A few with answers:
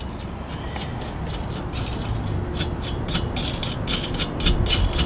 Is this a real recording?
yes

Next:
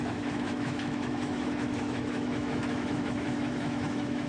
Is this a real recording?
no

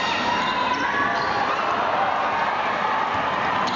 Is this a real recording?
yes